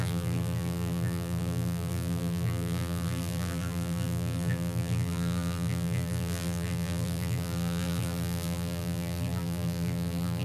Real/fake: fake